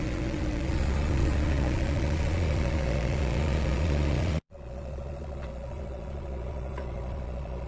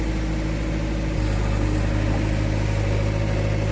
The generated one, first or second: first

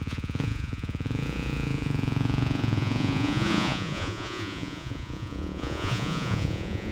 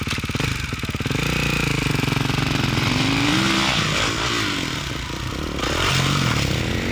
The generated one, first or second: first